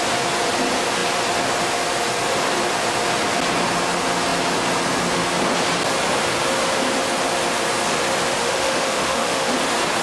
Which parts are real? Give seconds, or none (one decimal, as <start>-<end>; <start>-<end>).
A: 0.0-8.4; 9.5-10.0